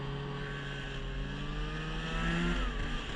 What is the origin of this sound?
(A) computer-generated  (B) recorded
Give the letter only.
B